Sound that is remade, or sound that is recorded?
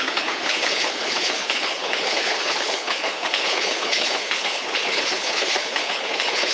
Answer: remade